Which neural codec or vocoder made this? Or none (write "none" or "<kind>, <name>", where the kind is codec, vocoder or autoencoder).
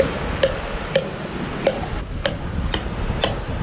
none